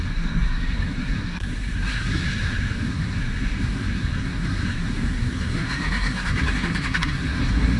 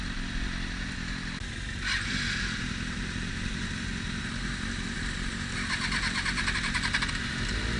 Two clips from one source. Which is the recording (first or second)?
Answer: second